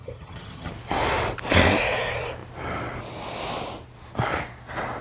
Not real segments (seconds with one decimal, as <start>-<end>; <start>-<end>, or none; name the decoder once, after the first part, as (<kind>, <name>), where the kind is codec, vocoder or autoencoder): 0.0-0.7 (vocoder, HiFi-GAN)